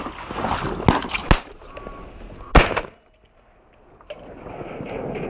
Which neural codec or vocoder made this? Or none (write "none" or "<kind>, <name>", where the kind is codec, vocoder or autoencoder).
none